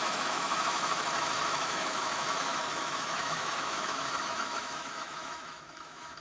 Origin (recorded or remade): remade